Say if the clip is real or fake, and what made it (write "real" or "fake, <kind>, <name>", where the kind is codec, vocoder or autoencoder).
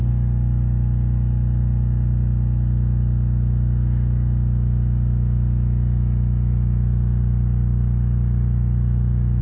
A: real